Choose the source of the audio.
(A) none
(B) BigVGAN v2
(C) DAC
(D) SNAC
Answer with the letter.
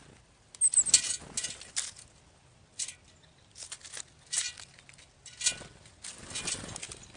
A